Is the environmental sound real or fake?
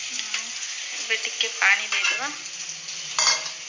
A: real